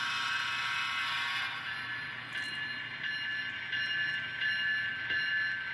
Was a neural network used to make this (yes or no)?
no